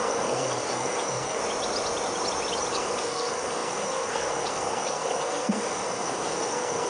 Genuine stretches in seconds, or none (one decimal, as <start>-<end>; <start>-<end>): 1.4-2.7